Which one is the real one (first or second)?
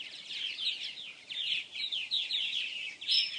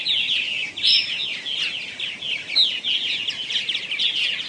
second